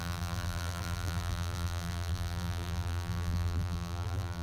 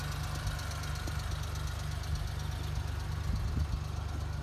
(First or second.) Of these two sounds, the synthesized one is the first